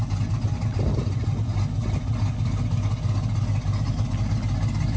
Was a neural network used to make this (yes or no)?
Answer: no